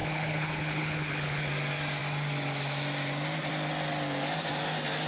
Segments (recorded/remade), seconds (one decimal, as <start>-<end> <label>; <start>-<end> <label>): 0.0-1.5 remade; 1.5-5.1 recorded